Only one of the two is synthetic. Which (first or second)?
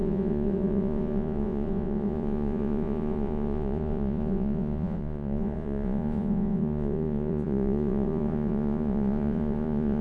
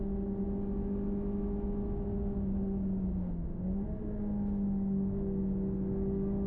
first